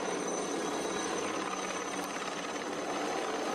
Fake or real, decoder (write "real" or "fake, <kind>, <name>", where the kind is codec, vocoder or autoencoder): fake, vocoder, BigVGAN v2